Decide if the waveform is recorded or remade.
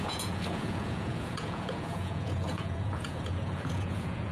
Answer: remade